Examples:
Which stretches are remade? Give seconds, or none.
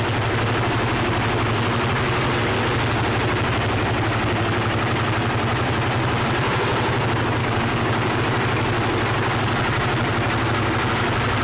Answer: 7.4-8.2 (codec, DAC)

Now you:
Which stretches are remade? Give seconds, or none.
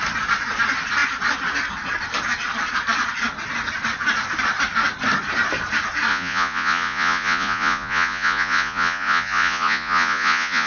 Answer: 6.1-10.7 (vocoder, Vocos)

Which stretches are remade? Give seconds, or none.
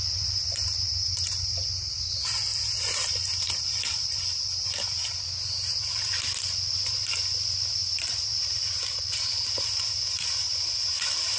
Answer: none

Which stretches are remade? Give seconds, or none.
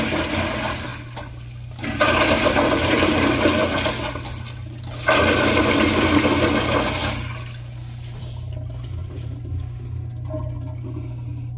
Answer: 9.0-9.5 (vocoder, BigVGAN v2)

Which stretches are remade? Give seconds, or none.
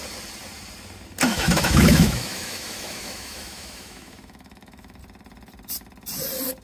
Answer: 1.3-5.0 (autoencoder, DAC-VAE)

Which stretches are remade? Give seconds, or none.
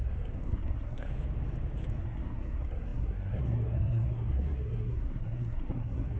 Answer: 0.0-1.1 (codec, SNAC); 2.0-6.2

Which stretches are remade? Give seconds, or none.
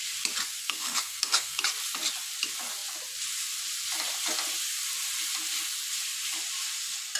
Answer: 0.6-1.6 (codec, SNAC)